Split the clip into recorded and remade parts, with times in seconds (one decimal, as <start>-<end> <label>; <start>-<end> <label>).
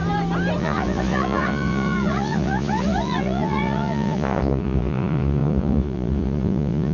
0.0-0.6 recorded; 0.6-6.9 remade